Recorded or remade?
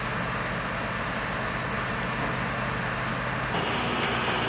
recorded